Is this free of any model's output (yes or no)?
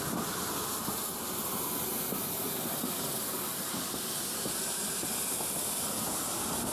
yes